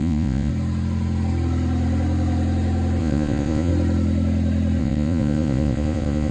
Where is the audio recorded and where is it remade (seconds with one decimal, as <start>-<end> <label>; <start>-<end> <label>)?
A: 0.0-0.5 remade; 0.5-3.0 recorded; 3.0-3.7 remade; 3.7-4.8 recorded; 4.8-6.3 remade